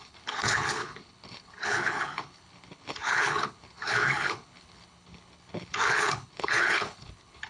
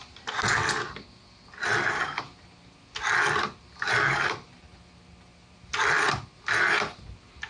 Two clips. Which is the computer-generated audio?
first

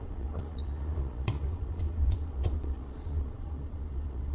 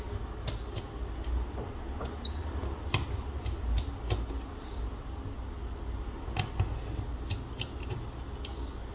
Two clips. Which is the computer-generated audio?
first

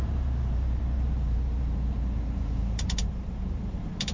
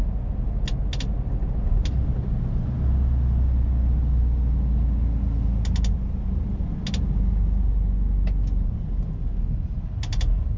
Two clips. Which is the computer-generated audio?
first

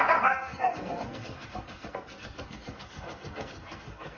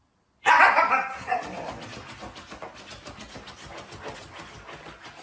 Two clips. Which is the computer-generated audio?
first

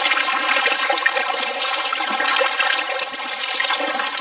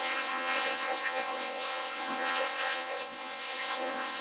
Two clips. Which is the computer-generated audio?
second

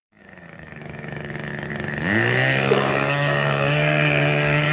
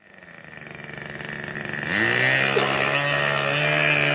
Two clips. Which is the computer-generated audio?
first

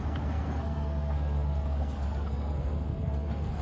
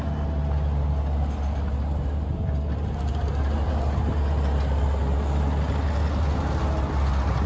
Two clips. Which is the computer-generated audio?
first